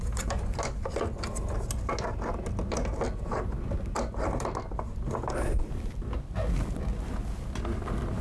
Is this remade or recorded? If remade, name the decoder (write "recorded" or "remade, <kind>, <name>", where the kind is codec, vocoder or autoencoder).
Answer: recorded